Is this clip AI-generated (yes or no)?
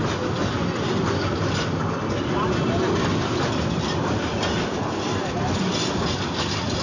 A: no